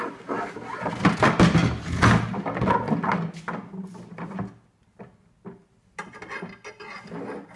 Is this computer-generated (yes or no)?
no